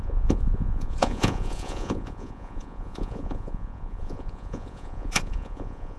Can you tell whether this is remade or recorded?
remade